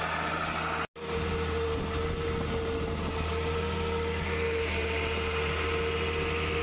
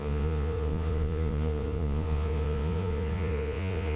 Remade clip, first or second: second